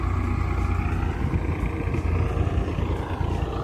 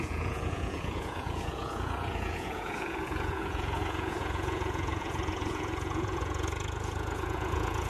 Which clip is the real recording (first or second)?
first